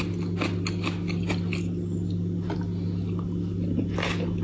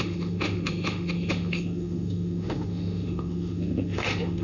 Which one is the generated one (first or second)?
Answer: second